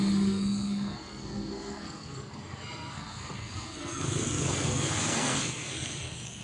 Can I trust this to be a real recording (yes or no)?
no